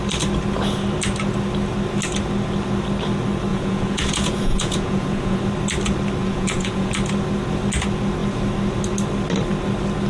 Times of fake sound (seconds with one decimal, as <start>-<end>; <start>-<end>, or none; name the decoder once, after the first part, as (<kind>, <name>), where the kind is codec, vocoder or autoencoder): 3.5-5.4 (vocoder, Vocos); 6.2-6.9